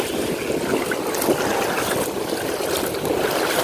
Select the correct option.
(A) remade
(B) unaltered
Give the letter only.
B